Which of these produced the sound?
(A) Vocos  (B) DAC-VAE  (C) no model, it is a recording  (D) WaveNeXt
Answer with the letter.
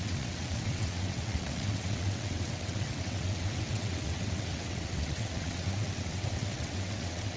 D